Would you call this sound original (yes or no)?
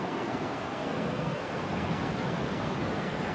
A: no